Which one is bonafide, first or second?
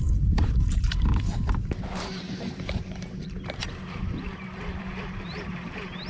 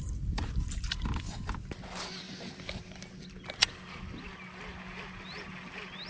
second